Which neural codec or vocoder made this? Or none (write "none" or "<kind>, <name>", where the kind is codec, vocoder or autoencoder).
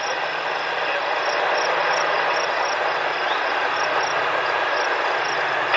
none